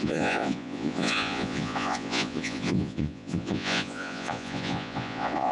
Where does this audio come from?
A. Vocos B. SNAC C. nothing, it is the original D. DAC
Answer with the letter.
A